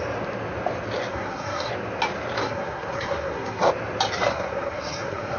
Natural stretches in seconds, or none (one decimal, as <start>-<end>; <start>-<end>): 0.0-1.1; 1.7-2.4; 3.7-4.3

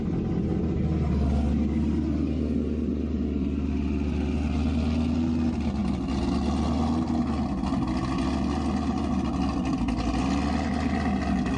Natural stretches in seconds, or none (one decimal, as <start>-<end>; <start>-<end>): 0.0-11.6

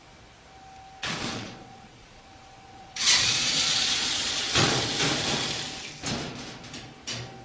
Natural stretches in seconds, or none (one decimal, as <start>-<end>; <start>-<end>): 0.0-1.0; 4.8-7.4